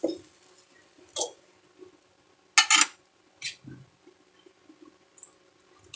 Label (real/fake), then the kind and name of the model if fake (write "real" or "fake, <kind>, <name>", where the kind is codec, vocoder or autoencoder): real